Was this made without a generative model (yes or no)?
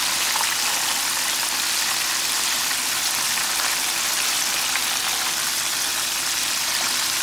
yes